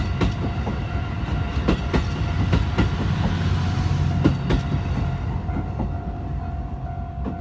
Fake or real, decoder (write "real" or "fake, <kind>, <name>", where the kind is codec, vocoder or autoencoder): real